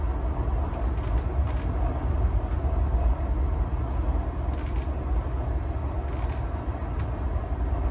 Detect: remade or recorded recorded